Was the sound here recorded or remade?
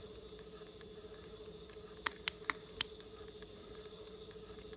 recorded